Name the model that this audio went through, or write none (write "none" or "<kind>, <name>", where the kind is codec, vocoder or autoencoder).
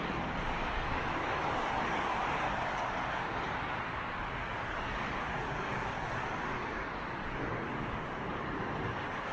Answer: codec, DAC